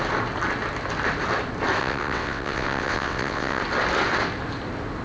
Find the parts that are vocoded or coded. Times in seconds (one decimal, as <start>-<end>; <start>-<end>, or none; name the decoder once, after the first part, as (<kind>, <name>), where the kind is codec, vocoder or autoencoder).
1.8-3.6 (vocoder, WaveNeXt)